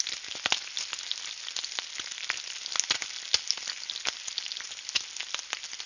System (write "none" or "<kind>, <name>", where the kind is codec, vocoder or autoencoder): none